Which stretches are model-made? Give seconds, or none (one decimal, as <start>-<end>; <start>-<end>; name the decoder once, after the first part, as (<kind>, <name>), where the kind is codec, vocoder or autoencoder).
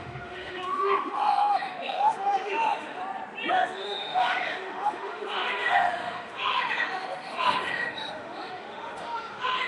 0.0-3.0 (autoencoder, DAC-VAE); 3.5-9.7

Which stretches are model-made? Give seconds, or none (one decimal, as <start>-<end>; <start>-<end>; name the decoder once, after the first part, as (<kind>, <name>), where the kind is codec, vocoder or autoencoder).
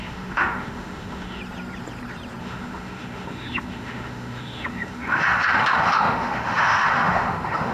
0.0-1.4 (autoencoder, DAC-VAE); 2.4-7.7